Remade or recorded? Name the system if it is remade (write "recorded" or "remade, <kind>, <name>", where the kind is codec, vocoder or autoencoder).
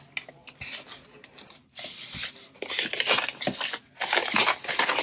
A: recorded